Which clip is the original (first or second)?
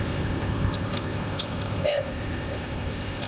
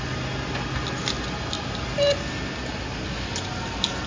second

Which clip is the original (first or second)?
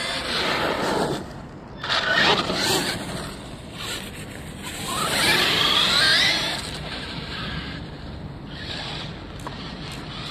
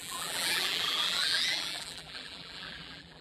first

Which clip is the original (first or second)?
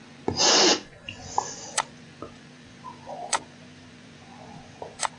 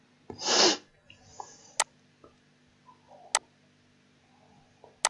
second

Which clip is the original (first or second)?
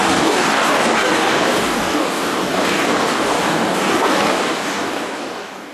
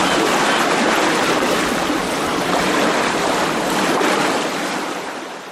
second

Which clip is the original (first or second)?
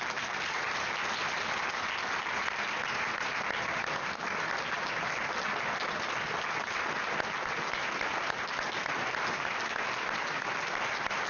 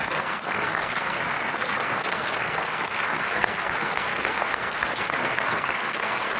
first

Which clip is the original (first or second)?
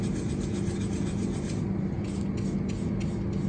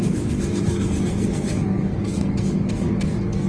first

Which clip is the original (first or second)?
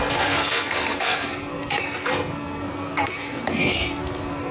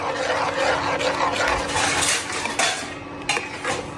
second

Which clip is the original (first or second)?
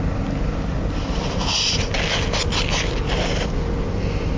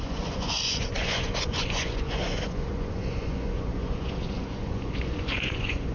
first